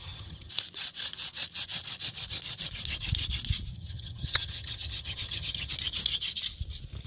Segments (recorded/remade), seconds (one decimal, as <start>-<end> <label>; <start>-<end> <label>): 0.0-0.5 remade; 0.5-3.7 recorded; 3.7-5.7 remade; 5.7-7.1 recorded